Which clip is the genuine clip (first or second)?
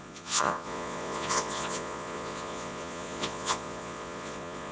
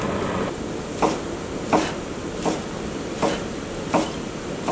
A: second